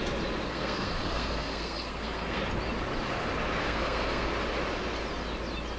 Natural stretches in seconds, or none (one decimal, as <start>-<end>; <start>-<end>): 0.0-0.5; 2.4-3.6; 4.3-5.8